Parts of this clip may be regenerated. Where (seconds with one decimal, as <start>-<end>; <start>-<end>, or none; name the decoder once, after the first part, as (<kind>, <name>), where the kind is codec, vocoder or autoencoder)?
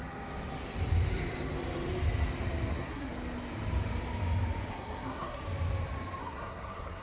2.7-3.1 (codec, SNAC); 4.7-5.4; 6.2-7.0